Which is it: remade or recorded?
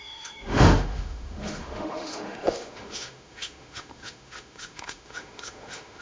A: remade